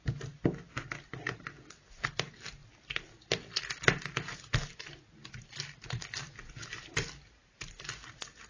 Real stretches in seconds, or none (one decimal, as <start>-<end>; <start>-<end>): 0.0-7.4; 8.1-8.5

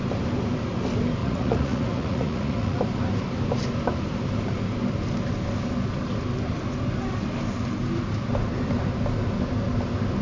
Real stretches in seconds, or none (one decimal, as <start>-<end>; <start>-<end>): 0.0-1.2; 2.8-10.2

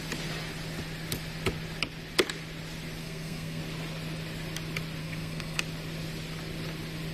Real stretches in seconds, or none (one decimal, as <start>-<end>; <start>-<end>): 0.0-3.0; 3.6-5.0; 5.6-7.1

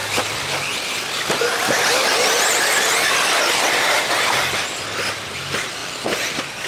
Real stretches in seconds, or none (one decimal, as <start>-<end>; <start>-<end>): 0.0-6.7

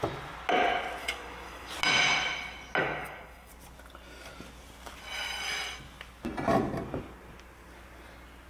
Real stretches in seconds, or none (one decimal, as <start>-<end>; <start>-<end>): 0.0-1.0; 1.7-2.8; 3.5-8.5

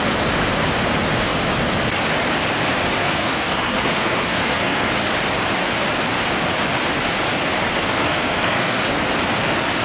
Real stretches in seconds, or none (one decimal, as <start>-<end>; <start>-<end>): 0.0-3.0; 4.9-7.8; 8.8-9.8

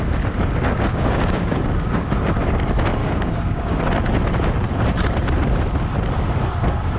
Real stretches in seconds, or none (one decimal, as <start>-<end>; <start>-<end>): 0.0-0.9; 2.1-3.0; 3.8-7.0